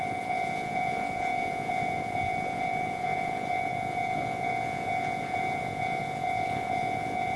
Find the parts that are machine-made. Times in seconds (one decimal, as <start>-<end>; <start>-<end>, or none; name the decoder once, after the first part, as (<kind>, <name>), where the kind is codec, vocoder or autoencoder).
0.0-7.4 (vocoder, Vocos)